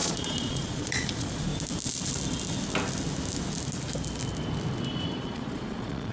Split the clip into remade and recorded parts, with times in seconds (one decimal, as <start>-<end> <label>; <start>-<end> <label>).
0.0-1.5 remade; 1.5-5.2 recorded; 5.2-6.1 remade